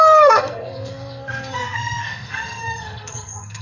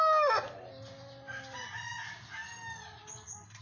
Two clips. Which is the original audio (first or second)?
second